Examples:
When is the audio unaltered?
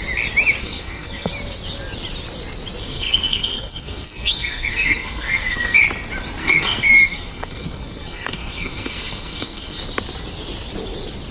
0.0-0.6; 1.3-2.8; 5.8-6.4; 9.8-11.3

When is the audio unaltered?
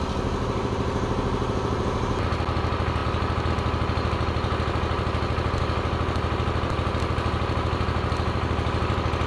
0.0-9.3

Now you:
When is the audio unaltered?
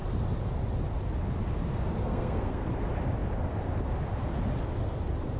0.0-2.0; 2.7-5.4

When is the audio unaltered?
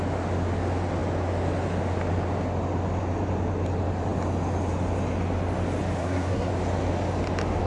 0.0-6.0; 6.5-7.7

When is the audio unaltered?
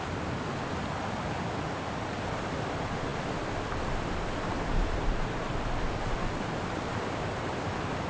0.0-8.1